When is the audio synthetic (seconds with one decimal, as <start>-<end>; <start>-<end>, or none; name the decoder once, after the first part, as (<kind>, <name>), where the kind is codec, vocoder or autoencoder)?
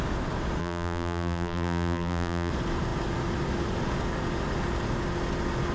0.6-2.5 (vocoder, BigVGAN v2)